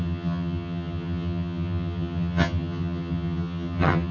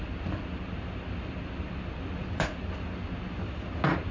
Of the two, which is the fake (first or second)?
first